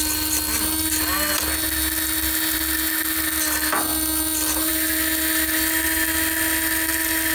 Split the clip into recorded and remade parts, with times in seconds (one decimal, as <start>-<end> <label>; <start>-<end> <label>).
0.0-7.3 recorded